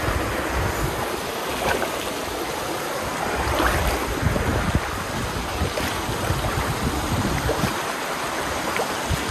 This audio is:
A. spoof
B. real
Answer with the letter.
B